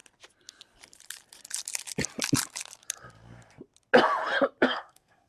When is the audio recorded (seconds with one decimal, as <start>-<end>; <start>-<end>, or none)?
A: 0.0-4.6